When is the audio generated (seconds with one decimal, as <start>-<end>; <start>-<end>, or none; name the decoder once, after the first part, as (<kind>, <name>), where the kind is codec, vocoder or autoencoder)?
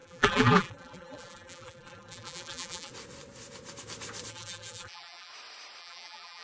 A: 0.0-2.9 (vocoder, BigVGAN v2); 4.3-5.3; 5.8-6.4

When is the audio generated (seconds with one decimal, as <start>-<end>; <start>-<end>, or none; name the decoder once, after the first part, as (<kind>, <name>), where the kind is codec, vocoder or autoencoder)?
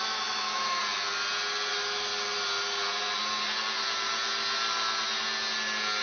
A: 0.0-0.8 (autoencoder, DAC-VAE); 1.7-2.1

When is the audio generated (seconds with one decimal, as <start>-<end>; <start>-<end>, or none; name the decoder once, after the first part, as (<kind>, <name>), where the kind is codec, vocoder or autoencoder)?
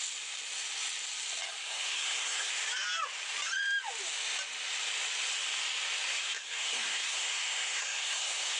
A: 1.6-2.5 (codec, SNAC); 6.1-8.6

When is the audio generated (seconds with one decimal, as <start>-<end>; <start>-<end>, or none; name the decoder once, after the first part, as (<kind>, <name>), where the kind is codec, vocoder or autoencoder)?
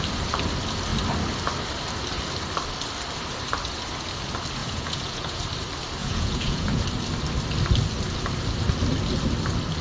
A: 4.6-5.4 (vocoder, Vocos); 6.0-6.8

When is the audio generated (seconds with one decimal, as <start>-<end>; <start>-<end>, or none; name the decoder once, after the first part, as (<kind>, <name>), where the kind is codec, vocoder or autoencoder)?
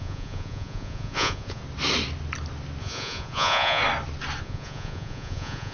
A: 0.0-1.6 (vocoder, Vocos); 2.8-3.8; 4.4-5.7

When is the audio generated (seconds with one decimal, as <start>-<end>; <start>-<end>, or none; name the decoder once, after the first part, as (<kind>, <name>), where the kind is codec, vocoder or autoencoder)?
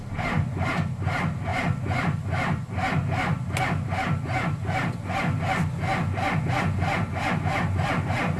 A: none